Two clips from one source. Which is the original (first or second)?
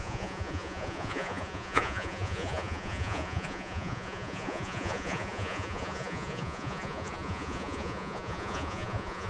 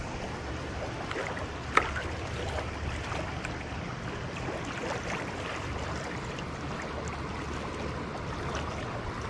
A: second